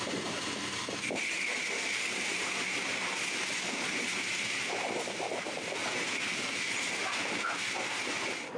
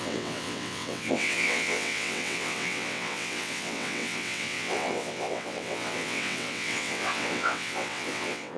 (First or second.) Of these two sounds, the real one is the first